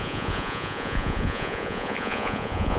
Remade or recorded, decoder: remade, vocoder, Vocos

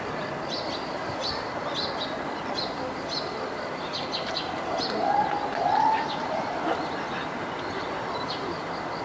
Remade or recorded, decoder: recorded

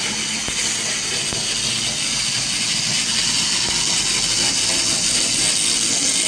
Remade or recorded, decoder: recorded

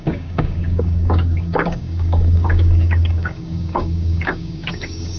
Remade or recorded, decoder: remade, codec, DAC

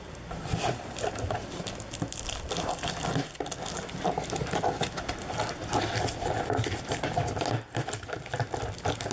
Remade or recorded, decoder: recorded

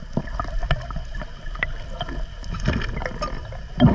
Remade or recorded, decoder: recorded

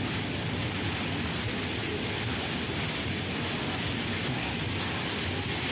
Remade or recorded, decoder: recorded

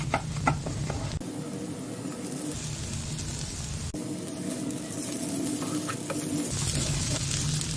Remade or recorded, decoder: recorded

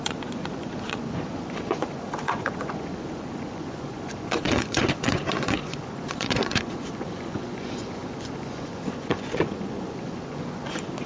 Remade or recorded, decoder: remade, vocoder, Vocos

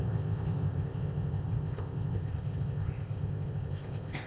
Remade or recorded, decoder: remade, codec, ZipCodec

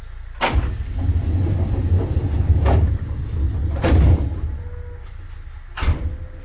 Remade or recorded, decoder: recorded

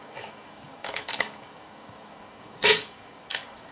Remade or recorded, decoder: remade, codec, DAC